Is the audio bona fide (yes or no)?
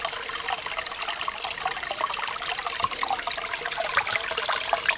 yes